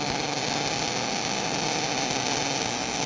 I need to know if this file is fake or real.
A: real